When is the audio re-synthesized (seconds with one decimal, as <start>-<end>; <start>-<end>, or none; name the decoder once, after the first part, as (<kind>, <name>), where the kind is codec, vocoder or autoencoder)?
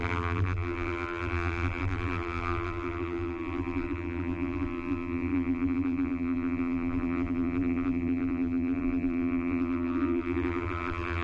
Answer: 0.0-11.2 (vocoder, BigVGAN v2)